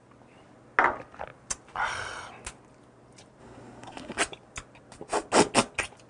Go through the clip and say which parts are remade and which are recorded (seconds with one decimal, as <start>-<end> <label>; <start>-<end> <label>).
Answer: 0.0-3.4 recorded; 3.4-4.2 remade; 4.2-6.1 recorded